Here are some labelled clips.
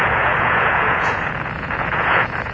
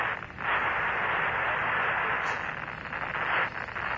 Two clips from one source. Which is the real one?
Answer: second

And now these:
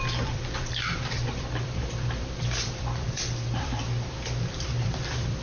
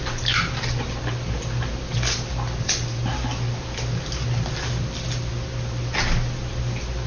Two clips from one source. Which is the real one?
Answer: second